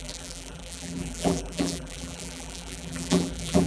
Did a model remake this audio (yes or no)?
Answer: yes